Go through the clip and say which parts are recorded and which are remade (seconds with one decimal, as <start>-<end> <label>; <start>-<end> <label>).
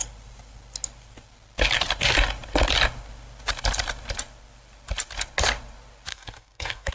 0.0-6.1 recorded; 6.1-6.9 remade